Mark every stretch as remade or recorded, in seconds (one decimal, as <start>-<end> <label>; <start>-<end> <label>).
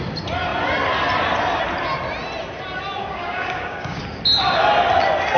0.0-3.0 recorded; 3.0-4.0 remade; 4.0-5.4 recorded